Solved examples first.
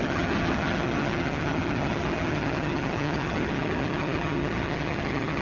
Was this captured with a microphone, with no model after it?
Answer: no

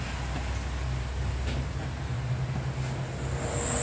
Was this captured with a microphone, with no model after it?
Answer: yes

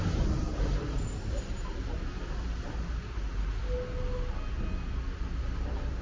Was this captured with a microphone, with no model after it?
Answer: yes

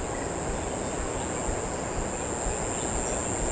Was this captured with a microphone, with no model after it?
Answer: yes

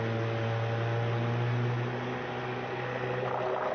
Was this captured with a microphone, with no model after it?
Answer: yes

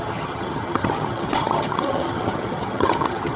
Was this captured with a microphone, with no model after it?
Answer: no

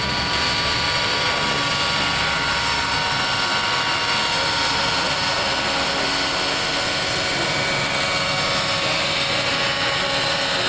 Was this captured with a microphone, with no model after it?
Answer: yes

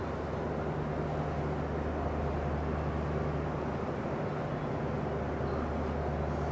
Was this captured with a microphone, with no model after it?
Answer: yes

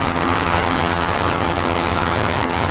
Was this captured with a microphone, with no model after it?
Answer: no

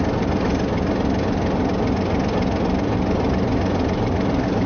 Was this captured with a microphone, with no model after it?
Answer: yes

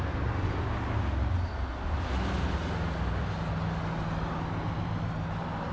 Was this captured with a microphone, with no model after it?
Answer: yes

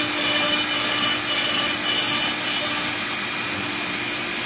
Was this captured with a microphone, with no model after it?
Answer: yes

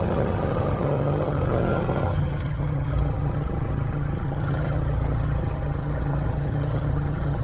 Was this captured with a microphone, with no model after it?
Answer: no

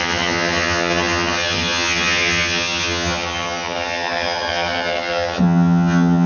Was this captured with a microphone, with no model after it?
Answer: no